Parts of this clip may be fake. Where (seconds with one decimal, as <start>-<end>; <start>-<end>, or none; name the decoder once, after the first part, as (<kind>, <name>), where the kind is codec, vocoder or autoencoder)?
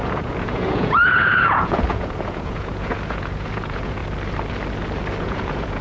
0.0-4.0 (vocoder, Vocos); 5.2-5.8